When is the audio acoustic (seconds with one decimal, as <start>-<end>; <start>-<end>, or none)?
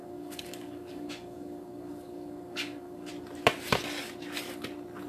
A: 3.1-5.1